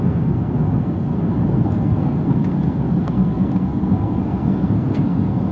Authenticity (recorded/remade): remade